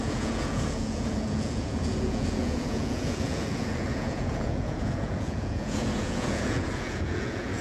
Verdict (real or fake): fake